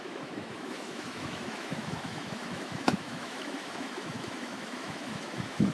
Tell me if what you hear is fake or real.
fake